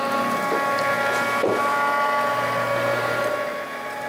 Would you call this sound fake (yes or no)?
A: no